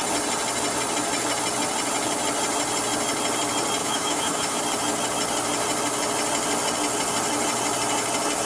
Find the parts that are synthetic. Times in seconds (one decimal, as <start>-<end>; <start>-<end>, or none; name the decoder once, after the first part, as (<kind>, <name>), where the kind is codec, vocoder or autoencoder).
3.8-4.6 (autoencoder, DAC-VAE)